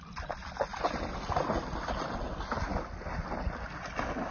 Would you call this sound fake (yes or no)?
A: no